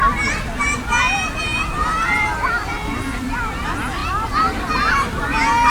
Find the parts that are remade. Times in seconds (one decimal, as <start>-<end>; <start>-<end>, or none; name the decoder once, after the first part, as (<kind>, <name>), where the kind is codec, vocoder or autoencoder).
0.0-3.4 (vocoder, BigVGAN v2)